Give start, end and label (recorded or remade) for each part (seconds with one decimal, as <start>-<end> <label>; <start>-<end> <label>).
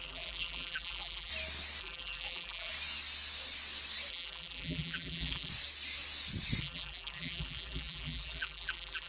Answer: 0.0-1.3 remade; 1.3-1.8 recorded; 1.8-2.7 remade; 2.7-4.1 recorded; 4.1-5.5 remade; 5.5-6.6 recorded; 6.6-9.1 remade